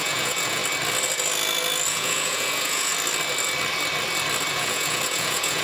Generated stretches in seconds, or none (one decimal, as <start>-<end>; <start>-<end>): 0.0-0.6; 1.9-2.9; 4.5-5.6